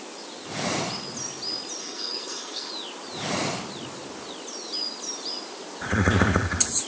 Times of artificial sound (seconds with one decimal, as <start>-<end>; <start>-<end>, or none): 1.8-2.7